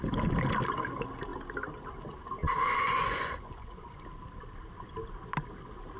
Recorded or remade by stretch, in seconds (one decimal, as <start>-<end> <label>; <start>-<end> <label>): 0.0-2.4 recorded; 2.4-4.0 remade; 4.0-6.0 recorded